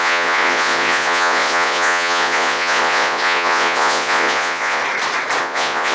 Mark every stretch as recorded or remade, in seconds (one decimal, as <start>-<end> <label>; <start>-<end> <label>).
0.0-4.8 remade; 4.8-5.4 recorded; 5.4-5.9 remade